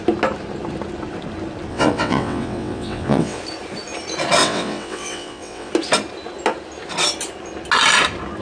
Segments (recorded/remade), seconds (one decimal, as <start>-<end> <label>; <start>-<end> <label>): 0.0-1.7 recorded; 1.7-3.4 remade; 3.4-4.4 recorded; 4.4-5.7 remade; 5.7-8.4 recorded

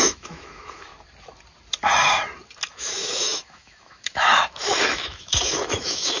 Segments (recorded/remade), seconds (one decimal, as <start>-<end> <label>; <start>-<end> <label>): 0.0-0.9 remade; 0.9-2.7 recorded; 2.7-6.2 remade

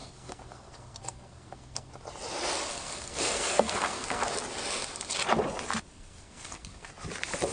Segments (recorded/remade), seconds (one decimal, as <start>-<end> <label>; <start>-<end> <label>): 0.0-1.9 remade; 1.9-2.7 recorded; 2.7-4.3 remade; 4.3-5.9 recorded; 5.9-6.9 remade; 6.9-7.5 recorded

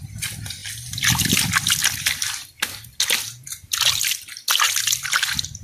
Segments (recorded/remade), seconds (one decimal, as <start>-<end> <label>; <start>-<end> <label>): 0.0-5.6 recorded

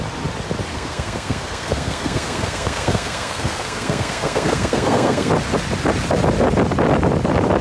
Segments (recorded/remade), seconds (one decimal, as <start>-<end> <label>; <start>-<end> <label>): 0.0-0.7 recorded; 0.7-5.3 remade; 5.3-7.6 recorded

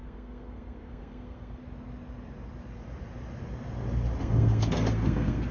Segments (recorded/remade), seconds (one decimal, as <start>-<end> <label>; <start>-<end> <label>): 0.0-1.6 remade; 1.6-4.2 recorded; 4.2-5.5 remade

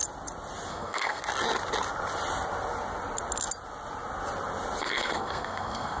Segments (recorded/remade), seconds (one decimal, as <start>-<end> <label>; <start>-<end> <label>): 0.0-0.7 recorded; 0.7-1.2 remade; 1.2-4.8 recorded; 4.8-6.0 remade

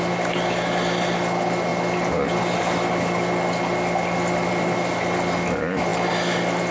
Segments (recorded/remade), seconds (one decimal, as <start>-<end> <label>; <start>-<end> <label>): 0.0-6.7 recorded